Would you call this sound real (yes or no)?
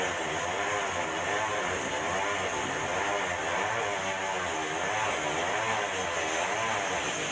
yes